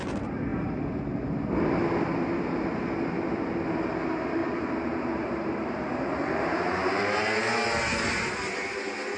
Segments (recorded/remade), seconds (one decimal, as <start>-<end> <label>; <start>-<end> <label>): 0.0-4.4 recorded; 4.4-7.0 remade; 7.0-9.2 recorded